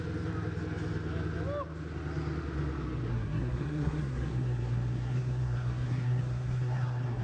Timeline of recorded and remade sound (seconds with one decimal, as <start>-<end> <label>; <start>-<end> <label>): 0.0-3.1 recorded; 3.1-7.2 remade